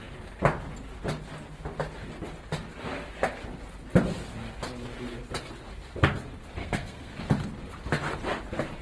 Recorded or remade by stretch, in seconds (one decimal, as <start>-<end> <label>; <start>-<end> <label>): 0.0-6.6 recorded; 6.6-7.1 remade; 7.1-8.8 recorded